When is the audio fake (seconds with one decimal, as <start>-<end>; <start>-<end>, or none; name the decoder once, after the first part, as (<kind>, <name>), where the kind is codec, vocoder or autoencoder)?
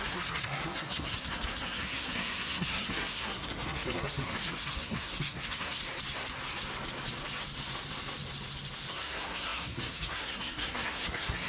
0.0-5.8 (codec, SNAC); 8.9-11.5